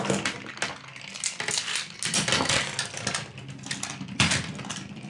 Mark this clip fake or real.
real